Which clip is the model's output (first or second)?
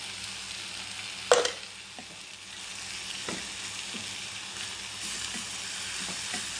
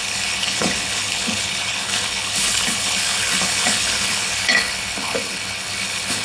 second